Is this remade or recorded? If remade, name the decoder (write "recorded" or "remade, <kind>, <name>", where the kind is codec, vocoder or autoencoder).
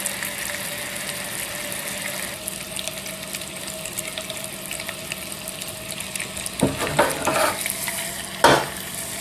recorded